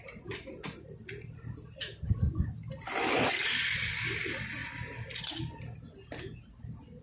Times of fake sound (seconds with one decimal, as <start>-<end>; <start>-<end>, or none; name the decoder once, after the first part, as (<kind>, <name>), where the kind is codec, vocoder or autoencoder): none